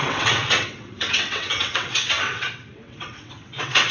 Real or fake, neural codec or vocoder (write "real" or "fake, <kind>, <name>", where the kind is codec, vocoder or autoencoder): fake, vocoder, WaveNeXt